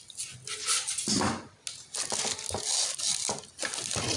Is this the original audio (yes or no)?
yes